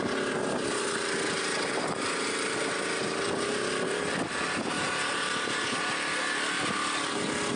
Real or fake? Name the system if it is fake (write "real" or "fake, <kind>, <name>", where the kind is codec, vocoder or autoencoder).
real